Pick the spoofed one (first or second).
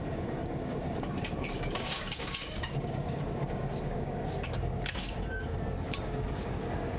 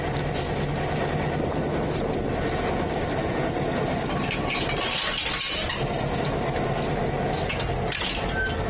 first